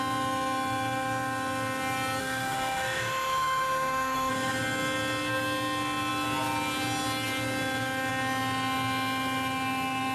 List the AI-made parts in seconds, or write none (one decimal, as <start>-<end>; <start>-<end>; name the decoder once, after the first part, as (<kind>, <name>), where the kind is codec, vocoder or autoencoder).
2.2-4.3 (autoencoder, DAC-VAE)